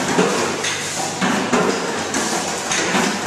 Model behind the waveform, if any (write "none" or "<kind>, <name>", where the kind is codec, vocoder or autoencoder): none